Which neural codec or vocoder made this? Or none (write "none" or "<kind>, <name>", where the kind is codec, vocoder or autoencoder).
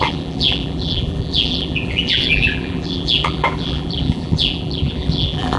vocoder, BigVGAN v2